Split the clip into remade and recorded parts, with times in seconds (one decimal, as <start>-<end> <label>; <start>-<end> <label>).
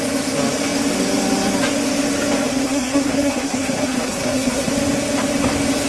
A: 0.0-2.5 recorded; 2.5-4.7 remade; 4.7-5.9 recorded